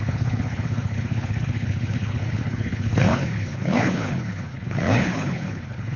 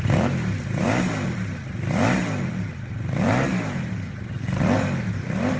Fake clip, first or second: first